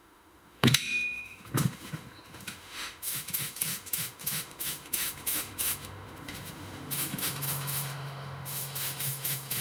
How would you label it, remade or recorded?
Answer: remade